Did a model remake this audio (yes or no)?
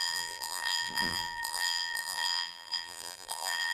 yes